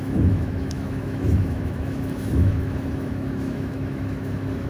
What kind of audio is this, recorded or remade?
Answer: remade